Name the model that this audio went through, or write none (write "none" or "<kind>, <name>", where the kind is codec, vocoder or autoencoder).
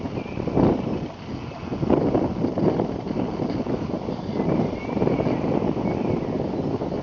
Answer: none